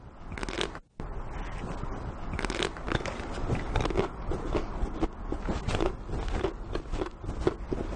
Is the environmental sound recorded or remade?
recorded